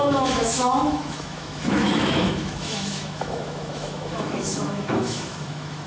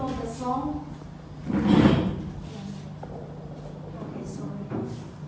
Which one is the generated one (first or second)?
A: first